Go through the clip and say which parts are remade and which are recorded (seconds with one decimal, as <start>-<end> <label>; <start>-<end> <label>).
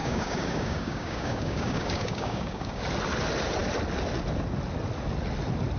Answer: 0.0-2.8 remade; 2.8-5.8 recorded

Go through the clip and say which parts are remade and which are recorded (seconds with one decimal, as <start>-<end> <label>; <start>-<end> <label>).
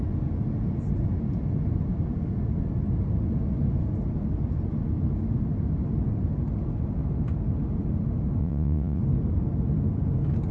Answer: 0.0-8.4 recorded; 8.4-9.0 remade; 9.0-10.5 recorded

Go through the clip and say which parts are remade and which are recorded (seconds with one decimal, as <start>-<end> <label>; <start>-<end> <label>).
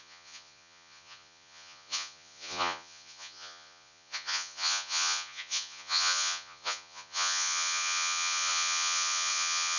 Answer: 0.0-9.8 remade